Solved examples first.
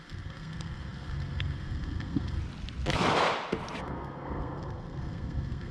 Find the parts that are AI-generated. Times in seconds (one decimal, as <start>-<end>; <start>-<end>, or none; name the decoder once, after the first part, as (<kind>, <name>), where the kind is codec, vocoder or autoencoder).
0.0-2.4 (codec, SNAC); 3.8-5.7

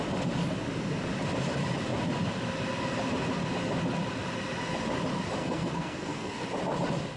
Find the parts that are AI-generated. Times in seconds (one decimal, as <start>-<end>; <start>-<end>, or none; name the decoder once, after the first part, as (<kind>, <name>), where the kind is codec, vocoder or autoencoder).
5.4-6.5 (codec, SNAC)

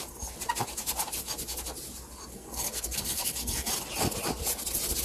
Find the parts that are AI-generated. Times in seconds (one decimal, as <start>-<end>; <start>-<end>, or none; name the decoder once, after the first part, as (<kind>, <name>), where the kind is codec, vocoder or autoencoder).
2.3-3.7 (codec, SNAC)

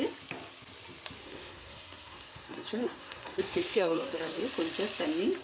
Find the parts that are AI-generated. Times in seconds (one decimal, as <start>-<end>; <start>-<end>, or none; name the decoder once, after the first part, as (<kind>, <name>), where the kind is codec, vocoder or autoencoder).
1.2-4.4 (codec, SNAC)

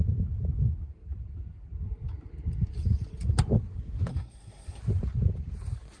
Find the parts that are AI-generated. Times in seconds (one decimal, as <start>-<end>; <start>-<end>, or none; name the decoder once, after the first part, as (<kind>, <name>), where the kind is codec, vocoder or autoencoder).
4.1-4.8 (codec, SNAC)

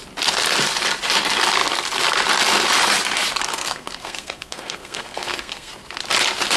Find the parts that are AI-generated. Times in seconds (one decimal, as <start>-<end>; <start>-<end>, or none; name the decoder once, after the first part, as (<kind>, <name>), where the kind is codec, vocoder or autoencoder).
3.5-5.7 (codec, SNAC)